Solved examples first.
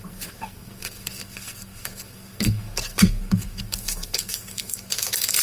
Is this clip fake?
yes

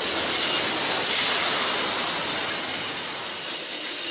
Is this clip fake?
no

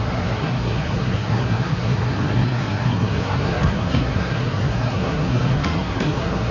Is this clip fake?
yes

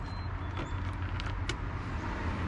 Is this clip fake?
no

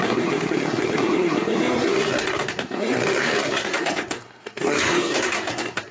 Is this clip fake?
yes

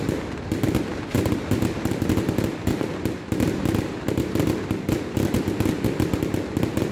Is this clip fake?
no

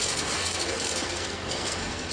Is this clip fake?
yes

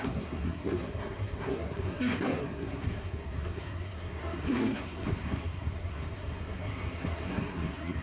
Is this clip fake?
yes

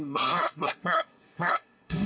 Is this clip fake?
yes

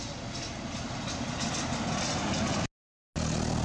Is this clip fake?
no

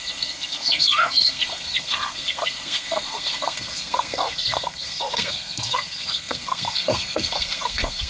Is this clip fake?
yes